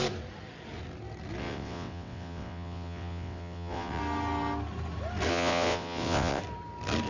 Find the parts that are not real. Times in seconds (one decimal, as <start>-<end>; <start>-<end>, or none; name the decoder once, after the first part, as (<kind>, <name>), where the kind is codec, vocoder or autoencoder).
1.4-4.0 (vocoder, WaveNeXt); 5.3-6.4